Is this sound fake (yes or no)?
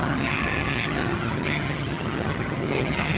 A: yes